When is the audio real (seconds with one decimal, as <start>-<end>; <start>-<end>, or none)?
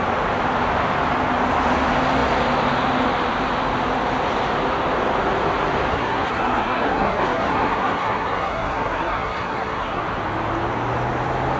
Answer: 0.0-5.9; 10.0-11.6